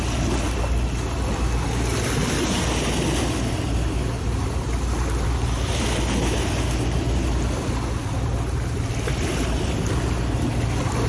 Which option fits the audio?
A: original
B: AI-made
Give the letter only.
A